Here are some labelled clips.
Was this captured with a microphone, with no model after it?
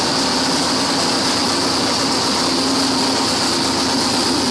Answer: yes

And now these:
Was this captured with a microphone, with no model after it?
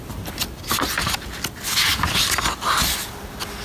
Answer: yes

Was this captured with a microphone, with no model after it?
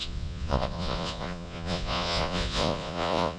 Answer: no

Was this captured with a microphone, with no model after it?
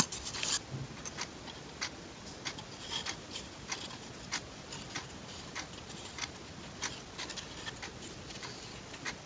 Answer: yes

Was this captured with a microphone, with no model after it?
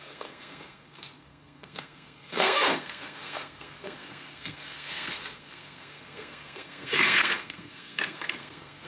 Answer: no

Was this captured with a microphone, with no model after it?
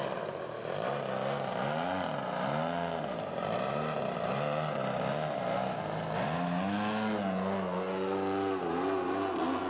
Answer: yes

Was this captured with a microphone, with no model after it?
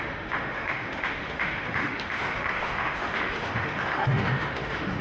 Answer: no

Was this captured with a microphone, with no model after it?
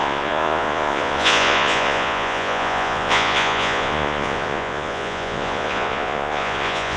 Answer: no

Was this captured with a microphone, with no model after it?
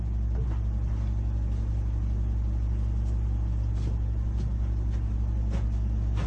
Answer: yes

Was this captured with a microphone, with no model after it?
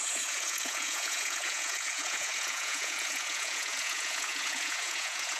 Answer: no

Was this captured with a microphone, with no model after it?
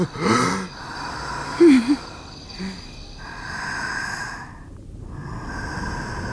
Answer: yes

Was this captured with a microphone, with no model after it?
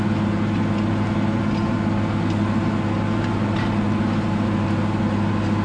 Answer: yes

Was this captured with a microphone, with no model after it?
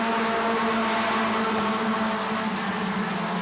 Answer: yes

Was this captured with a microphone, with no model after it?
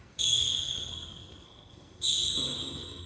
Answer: no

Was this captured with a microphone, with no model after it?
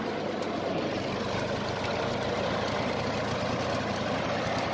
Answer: yes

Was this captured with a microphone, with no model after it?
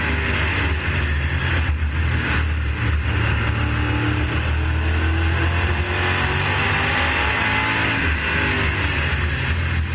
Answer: yes